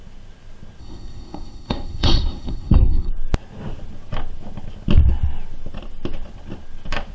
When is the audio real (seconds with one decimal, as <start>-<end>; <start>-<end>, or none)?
0.0-0.8; 3.1-7.1